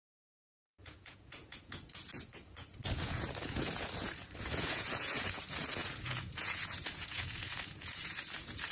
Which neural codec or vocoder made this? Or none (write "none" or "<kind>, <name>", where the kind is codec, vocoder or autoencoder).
vocoder, Vocos